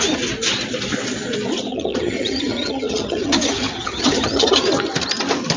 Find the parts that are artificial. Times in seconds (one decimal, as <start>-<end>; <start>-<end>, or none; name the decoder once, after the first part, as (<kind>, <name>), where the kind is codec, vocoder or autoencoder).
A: 1.7-4.6 (vocoder, HiFi-GAN)